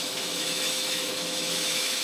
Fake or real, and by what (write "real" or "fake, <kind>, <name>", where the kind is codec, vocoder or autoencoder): fake, autoencoder, DAC-VAE